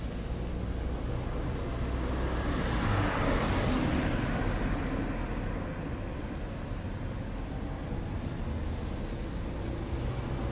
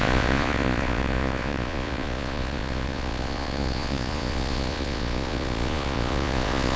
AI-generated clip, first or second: second